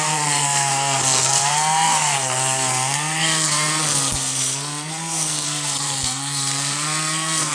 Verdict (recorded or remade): remade